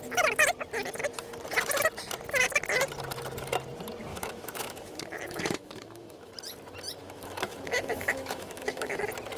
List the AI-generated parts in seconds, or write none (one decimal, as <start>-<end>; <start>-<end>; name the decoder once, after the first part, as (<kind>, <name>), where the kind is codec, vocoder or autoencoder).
4.1-6.3 (autoencoder, DAC-VAE); 7.0-9.0